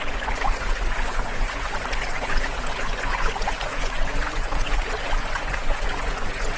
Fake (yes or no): yes